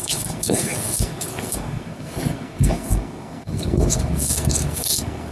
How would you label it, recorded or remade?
remade